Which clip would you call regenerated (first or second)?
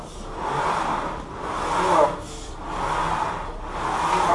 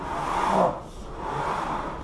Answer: second